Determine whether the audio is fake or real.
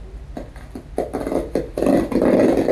real